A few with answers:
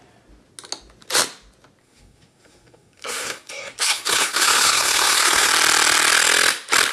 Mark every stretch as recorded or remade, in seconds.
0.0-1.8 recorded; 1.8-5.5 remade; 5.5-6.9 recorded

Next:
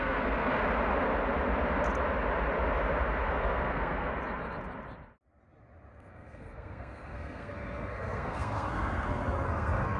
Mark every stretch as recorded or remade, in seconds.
0.0-0.6 remade; 0.6-3.3 recorded; 3.3-4.1 remade; 4.1-5.9 recorded; 5.9-10.0 remade

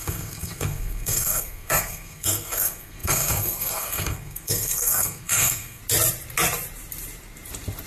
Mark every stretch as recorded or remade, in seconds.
0.0-5.8 remade; 5.8-7.9 recorded

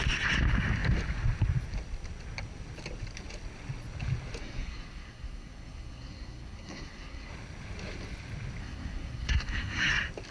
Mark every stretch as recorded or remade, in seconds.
0.0-4.4 recorded; 4.4-7.3 remade; 7.3-8.6 recorded; 8.6-9.9 remade; 9.9-10.3 recorded

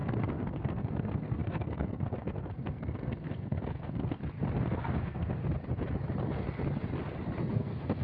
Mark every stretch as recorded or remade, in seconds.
0.0-4.2 remade; 4.2-4.8 recorded; 4.8-5.4 remade; 5.4-7.5 recorded; 7.5-8.0 remade